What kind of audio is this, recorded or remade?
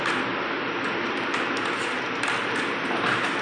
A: recorded